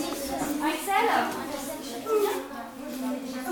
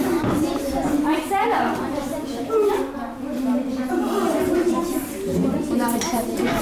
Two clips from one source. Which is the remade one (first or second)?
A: second